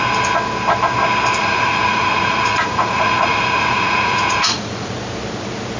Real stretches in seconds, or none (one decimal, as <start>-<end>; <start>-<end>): 0.0-1.4; 4.9-5.8